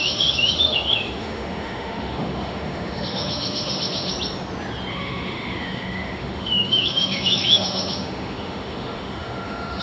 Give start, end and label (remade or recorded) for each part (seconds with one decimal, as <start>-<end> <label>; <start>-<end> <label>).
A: 0.0-4.1 remade; 4.1-4.9 recorded; 4.9-9.8 remade